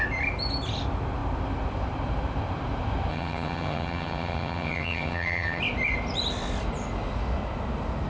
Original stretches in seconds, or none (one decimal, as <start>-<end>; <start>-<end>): 0.0-3.1; 5.6-8.1